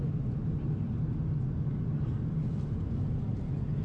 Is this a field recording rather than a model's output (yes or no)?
yes